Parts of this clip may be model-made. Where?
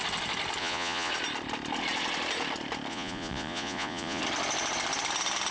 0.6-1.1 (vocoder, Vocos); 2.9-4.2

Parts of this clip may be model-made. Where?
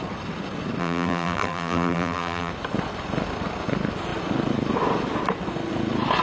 0.8-2.5 (vocoder, BigVGAN v2)